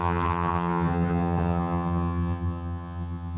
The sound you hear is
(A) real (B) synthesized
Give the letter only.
B